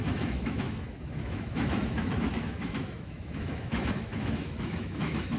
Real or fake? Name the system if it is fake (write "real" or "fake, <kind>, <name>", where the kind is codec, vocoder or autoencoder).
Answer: fake, autoencoder, DAC-VAE